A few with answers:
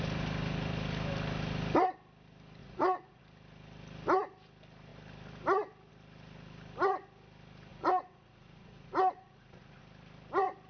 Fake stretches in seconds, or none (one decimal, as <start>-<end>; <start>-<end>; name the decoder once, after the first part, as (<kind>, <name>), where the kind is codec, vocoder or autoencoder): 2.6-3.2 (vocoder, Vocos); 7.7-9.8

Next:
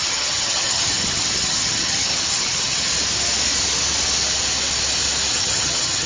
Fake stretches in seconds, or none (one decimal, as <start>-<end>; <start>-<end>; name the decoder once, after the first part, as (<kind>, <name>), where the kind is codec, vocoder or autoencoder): 0.0-2.9 (vocoder, HiFi-GAN); 5.3-6.1

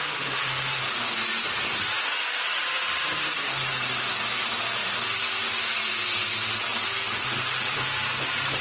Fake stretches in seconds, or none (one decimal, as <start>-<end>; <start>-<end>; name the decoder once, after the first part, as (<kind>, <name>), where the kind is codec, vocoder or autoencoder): 0.0-6.7 (vocoder, BigVGAN v2); 7.7-8.6

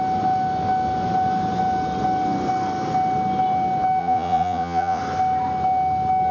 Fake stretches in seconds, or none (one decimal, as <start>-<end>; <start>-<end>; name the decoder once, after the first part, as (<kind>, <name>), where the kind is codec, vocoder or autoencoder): 4.0-5.0 (vocoder, Vocos)

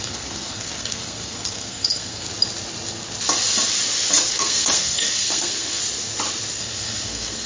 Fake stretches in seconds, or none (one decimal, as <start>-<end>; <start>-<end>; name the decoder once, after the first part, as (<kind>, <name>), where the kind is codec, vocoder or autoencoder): 0.0-2.3 (codec, SNAC); 4.3-5.8; 6.6-7.5

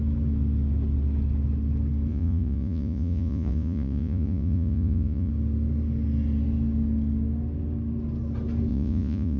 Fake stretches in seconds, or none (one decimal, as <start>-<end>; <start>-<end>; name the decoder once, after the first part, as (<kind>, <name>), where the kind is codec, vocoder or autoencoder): 2.1-5.3 (vocoder, Vocos); 8.7-9.4